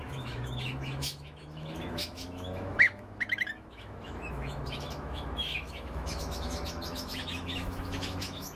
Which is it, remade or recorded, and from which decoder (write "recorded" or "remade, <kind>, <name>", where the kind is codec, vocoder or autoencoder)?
remade, autoencoder, DAC-VAE